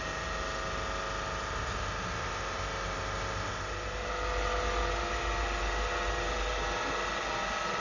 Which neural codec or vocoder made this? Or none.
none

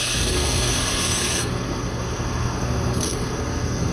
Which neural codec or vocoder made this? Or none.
codec, SNAC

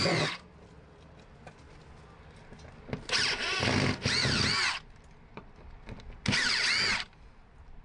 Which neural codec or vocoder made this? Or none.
none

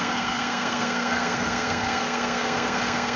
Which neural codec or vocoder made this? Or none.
codec, SNAC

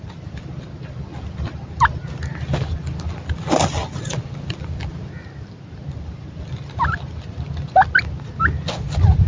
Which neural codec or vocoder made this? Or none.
none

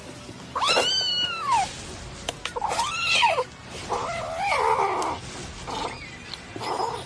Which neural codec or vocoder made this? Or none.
none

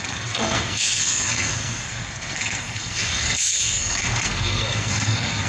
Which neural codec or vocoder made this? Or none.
codec, SNAC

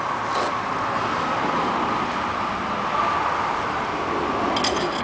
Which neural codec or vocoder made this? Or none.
none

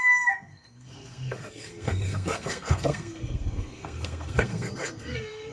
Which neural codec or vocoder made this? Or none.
codec, SNAC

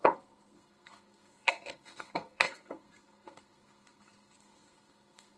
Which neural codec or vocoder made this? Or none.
codec, SNAC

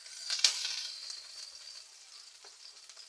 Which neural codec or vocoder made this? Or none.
none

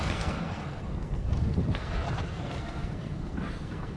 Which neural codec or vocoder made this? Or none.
codec, SNAC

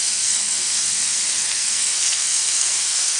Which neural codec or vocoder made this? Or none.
codec, SNAC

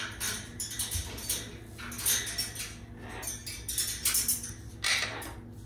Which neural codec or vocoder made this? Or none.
none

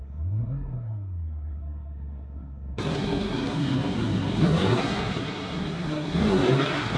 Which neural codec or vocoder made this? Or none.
codec, SNAC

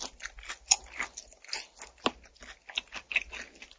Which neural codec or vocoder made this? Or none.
none